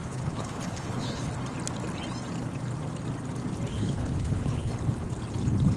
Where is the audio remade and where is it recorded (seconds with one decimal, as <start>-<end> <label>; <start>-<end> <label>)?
0.0-1.3 remade; 1.3-3.7 recorded; 3.7-4.7 remade; 4.7-5.8 recorded